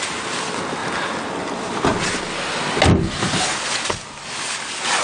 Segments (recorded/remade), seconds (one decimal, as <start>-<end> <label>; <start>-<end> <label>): 0.0-5.0 recorded